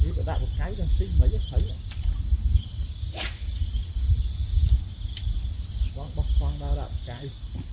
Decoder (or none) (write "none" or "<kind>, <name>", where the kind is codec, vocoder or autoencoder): none